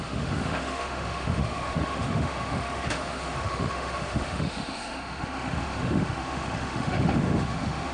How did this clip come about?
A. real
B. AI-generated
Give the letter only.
B